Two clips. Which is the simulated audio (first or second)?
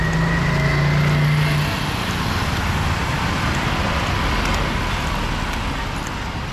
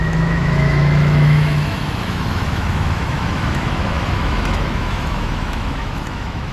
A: second